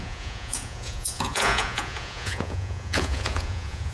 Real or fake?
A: fake